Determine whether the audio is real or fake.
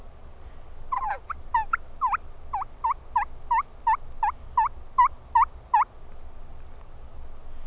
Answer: real